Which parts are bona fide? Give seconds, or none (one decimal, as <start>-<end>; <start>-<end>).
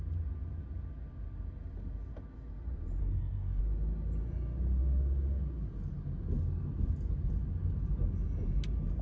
0.0-3.0; 3.6-9.0